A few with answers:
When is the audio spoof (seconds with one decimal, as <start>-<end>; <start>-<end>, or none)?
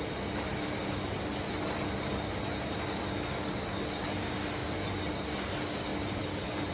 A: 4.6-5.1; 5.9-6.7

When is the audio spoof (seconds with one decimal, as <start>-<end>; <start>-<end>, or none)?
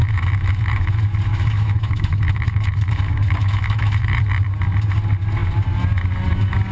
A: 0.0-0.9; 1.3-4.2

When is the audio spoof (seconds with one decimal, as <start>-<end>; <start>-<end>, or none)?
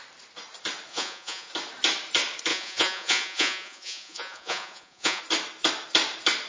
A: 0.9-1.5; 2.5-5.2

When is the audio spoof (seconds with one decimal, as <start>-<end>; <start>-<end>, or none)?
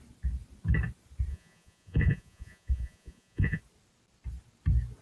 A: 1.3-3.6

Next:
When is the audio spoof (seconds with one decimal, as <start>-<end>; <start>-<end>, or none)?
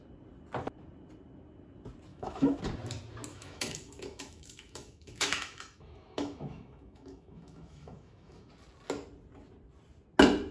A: 2.1-2.6; 3.3-8.5